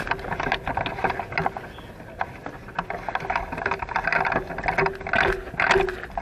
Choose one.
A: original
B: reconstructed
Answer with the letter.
A